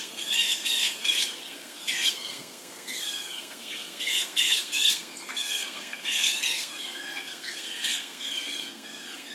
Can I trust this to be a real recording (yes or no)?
no